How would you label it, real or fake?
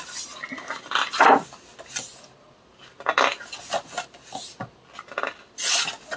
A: real